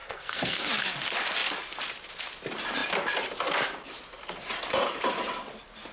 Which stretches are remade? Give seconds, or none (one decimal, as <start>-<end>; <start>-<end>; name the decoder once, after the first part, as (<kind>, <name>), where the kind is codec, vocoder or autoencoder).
0.0-0.7 (codec, SNAC)